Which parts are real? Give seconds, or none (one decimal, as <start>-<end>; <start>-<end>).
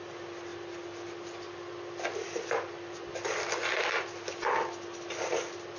0.0-5.8